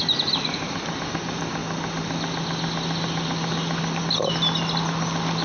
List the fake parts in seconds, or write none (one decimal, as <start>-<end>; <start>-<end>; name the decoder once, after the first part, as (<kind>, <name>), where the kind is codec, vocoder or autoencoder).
0.0-0.8 (vocoder, BigVGAN v2)

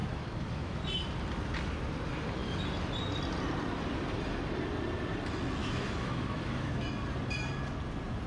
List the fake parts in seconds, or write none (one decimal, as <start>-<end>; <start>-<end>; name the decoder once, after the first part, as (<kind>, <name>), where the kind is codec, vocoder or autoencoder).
0.0-0.8 (autoencoder, DAC-VAE); 5.6-6.9

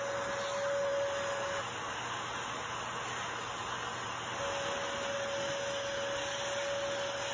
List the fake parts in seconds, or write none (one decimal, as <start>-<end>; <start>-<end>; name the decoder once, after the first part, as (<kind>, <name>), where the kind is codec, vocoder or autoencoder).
none